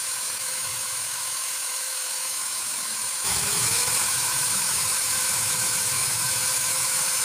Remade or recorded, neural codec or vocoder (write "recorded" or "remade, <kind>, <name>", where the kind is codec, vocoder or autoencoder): remade, autoencoder, DAC-VAE